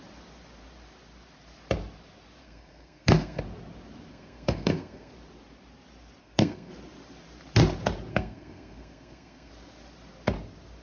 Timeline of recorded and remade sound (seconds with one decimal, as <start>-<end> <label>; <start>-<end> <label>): 0.0-2.4 recorded; 2.4-3.4 remade; 3.4-4.1 recorded; 4.1-5.1 remade; 5.1-6.2 recorded; 6.2-6.7 remade; 6.7-8.1 recorded; 8.1-9.5 remade; 9.5-10.8 recorded